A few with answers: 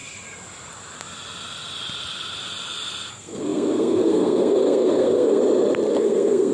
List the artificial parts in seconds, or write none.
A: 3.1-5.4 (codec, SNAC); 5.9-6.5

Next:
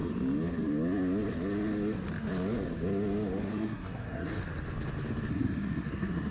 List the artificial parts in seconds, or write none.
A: 3.4-4.3 (codec, SNAC); 5.3-6.3

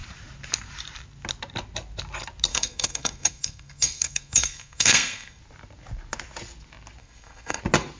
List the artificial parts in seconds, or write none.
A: 2.5-5.4 (codec, SNAC); 7.0-7.6

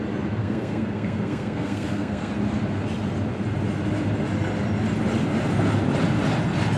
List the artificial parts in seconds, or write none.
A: 0.4-2.3 (codec, SNAC)

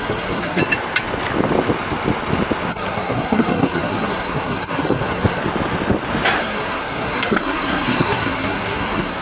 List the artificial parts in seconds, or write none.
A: 0.0-0.6 (codec, SNAC); 2.7-5.4; 6.4-9.2

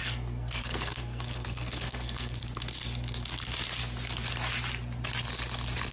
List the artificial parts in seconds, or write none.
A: 0.0-2.4 (codec, SNAC)

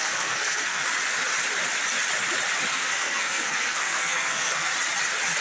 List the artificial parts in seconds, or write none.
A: 0.0-0.8 (codec, SNAC); 2.7-4.7